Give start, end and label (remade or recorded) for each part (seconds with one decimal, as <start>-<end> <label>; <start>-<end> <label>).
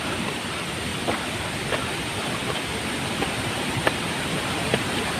0.0-5.2 remade